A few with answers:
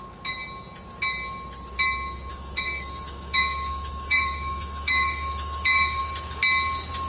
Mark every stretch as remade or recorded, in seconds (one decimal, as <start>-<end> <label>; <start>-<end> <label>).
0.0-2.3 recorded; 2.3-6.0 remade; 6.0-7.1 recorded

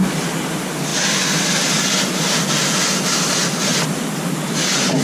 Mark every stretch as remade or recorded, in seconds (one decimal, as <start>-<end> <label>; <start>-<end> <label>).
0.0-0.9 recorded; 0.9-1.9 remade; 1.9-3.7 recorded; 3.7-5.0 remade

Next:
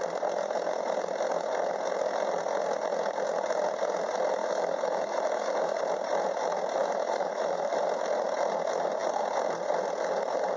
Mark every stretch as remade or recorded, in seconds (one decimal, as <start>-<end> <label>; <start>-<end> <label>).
0.0-4.4 recorded; 4.4-5.8 remade; 5.8-6.8 recorded; 6.8-7.8 remade; 7.8-10.6 recorded

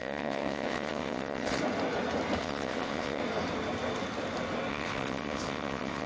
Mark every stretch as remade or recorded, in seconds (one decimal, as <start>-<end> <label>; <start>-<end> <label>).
0.0-1.6 remade; 1.6-2.4 recorded; 2.4-3.2 remade; 3.2-4.7 recorded; 4.7-6.1 remade

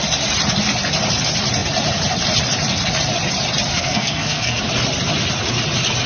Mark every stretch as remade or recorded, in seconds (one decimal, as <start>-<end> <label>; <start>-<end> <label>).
0.0-3.7 recorded; 3.7-4.6 remade; 4.6-6.1 recorded

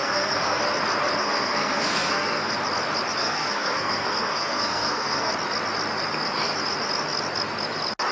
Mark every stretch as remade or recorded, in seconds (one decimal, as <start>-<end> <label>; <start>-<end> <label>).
0.0-0.6 remade; 0.6-1.2 recorded; 1.2-2.5 remade; 2.5-3.2 recorded; 3.2-5.3 remade; 5.3-8.1 recorded

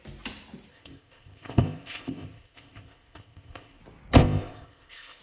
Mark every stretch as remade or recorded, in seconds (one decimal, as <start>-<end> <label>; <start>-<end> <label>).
0.0-0.7 recorded; 0.7-3.8 remade; 3.8-4.2 recorded; 4.2-5.2 remade